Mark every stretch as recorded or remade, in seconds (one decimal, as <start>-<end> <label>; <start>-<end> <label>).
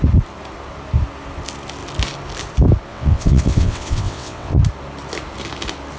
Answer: 0.0-2.9 recorded; 2.9-4.6 remade; 4.6-6.0 recorded